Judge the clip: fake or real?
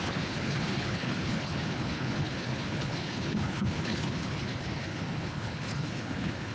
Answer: fake